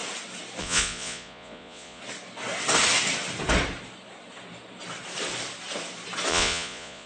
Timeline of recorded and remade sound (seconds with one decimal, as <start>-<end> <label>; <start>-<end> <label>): 0.0-0.6 recorded; 0.6-2.0 remade; 2.0-6.3 recorded; 6.3-7.1 remade